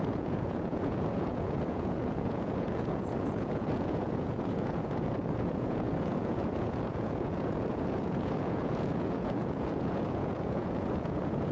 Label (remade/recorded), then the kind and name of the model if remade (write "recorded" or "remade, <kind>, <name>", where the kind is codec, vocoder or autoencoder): remade, vocoder, Vocos